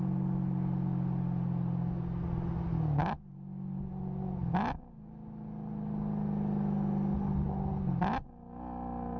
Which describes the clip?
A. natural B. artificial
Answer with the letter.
A